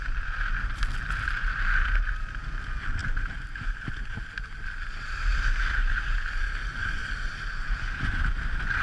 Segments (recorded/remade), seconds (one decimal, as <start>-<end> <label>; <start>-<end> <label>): 0.0-8.8 recorded